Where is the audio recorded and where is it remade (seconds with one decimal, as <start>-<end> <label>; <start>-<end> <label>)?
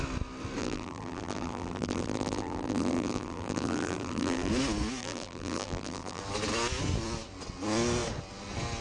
0.0-0.6 recorded; 0.6-4.5 remade; 4.5-5.0 recorded; 5.0-6.2 remade; 6.2-8.8 recorded